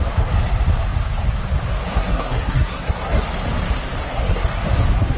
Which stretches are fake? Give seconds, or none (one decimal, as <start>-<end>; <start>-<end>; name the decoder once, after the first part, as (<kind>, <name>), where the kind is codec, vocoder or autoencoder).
1.9-3.2 (codec, SNAC); 4.0-4.6